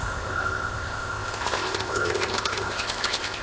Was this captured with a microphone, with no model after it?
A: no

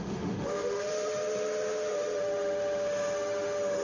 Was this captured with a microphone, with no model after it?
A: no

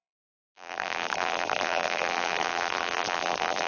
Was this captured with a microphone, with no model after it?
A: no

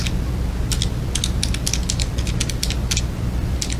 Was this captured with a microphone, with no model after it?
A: yes